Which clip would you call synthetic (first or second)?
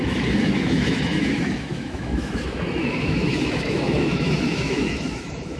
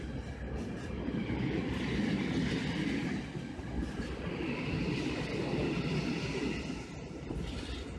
first